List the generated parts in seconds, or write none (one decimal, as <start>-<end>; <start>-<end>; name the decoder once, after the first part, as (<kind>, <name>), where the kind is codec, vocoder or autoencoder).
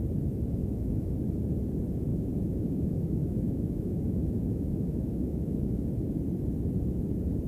0.6-1.1 (autoencoder, DAC-VAE); 2.1-5.9